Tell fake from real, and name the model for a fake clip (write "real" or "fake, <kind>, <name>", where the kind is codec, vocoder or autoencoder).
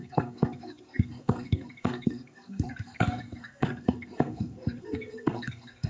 fake, codec, SNAC